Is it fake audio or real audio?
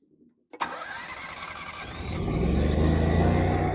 real